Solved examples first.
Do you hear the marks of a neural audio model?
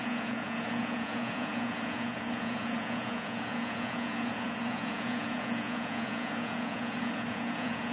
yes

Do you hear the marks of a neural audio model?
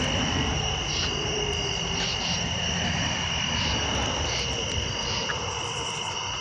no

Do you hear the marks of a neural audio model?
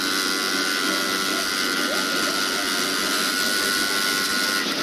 no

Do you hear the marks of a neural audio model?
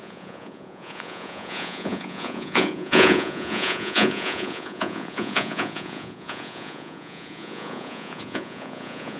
yes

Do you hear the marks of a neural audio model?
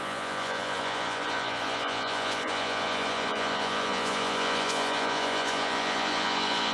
yes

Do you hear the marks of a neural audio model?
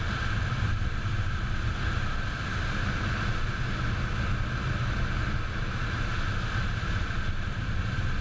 no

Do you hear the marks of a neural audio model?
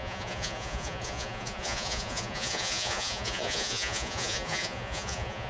yes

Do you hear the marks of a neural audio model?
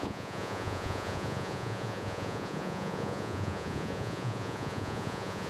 yes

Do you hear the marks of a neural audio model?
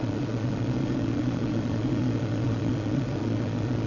yes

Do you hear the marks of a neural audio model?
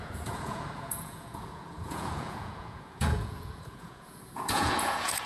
yes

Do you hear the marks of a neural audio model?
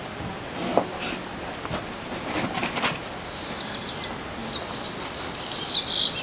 no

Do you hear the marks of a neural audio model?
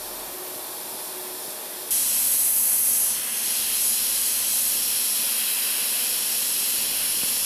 no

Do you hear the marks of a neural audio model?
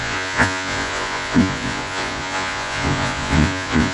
yes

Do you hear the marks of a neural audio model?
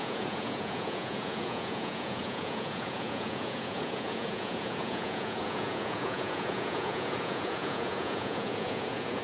yes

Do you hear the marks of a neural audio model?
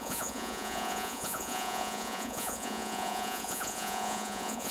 yes